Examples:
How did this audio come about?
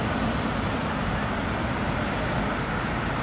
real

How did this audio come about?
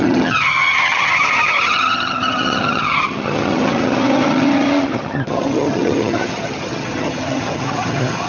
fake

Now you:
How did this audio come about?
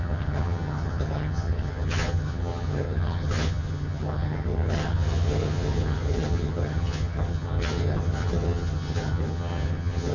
fake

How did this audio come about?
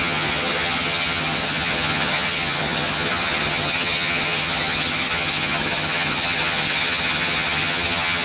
fake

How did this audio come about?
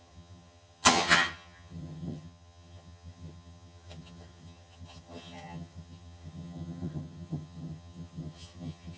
fake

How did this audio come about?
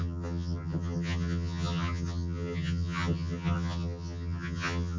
fake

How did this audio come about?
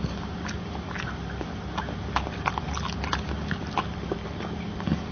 real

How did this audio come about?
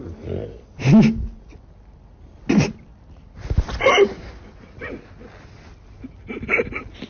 real